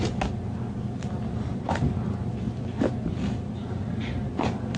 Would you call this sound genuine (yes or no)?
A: yes